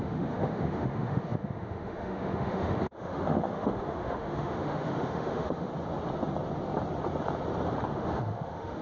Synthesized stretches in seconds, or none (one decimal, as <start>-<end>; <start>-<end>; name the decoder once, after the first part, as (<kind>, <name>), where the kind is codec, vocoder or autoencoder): 0.0-5.7 (autoencoder, DAC-VAE); 7.9-8.8